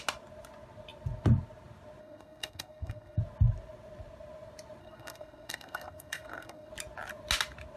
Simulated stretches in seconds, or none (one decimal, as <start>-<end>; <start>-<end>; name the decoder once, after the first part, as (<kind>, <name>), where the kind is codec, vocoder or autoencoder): 2.0-3.2 (codec, SNAC); 4.8-6.7